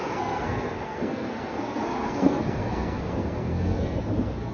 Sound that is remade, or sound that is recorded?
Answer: remade